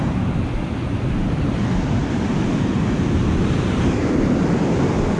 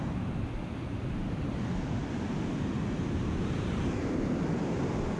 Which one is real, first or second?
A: second